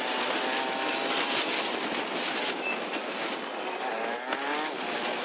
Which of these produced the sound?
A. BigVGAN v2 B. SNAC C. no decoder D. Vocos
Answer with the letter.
C